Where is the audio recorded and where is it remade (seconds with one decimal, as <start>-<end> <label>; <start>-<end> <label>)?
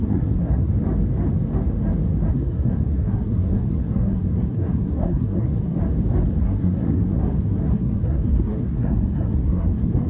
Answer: 0.0-0.7 remade; 0.7-2.3 recorded; 2.3-5.8 remade; 5.8-6.4 recorded; 6.4-10.1 remade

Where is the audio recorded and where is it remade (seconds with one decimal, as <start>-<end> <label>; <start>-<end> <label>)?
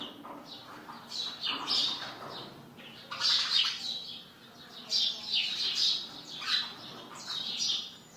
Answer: 0.0-8.2 recorded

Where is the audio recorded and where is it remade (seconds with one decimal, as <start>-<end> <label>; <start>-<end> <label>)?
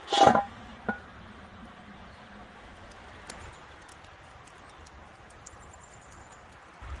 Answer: 0.0-0.6 recorded; 0.6-2.4 remade; 2.4-3.9 recorded; 3.9-6.2 remade; 6.2-7.0 recorded